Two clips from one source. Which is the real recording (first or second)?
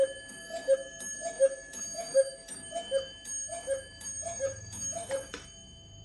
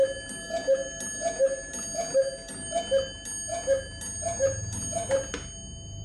second